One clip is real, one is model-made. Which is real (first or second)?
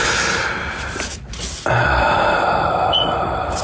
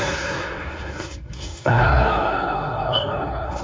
first